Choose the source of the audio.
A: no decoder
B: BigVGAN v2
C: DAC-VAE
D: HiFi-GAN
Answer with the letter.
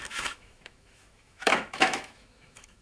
C